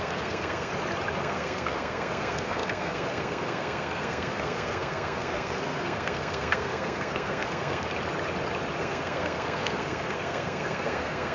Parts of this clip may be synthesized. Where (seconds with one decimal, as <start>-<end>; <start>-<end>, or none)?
0.0-0.7; 1.2-7.9; 8.8-11.3